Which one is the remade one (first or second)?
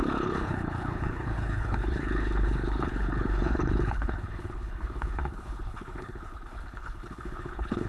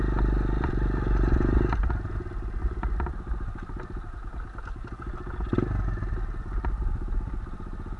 first